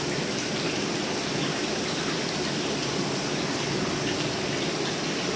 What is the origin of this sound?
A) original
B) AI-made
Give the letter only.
A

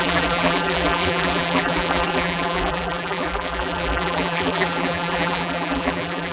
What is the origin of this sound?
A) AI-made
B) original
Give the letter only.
A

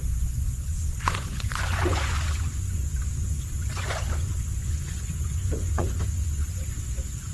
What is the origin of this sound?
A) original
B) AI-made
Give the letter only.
B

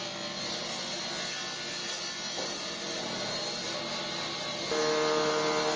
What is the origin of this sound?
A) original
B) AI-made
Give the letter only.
A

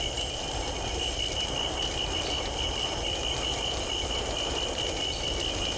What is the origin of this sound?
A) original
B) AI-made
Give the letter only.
A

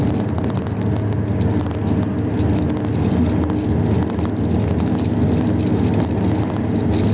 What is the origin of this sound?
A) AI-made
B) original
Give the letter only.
B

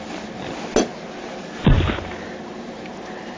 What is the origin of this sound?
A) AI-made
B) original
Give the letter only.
B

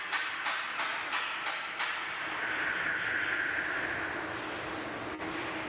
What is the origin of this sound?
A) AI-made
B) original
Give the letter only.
B